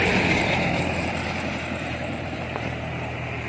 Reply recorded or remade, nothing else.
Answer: remade